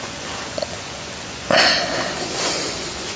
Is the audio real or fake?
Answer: fake